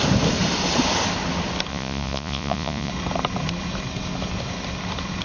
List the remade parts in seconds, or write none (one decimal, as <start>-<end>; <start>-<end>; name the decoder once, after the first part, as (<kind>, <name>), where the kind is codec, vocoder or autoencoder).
1.7-2.9 (vocoder, Vocos)